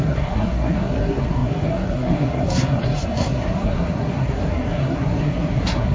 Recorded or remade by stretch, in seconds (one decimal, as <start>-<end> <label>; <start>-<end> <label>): 0.0-5.9 remade